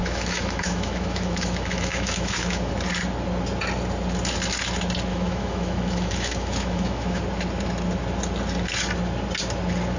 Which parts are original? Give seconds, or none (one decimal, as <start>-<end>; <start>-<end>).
2.7-5.1; 7.2-10.0